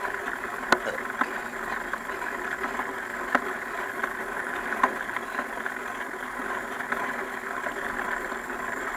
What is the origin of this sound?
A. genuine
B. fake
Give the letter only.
A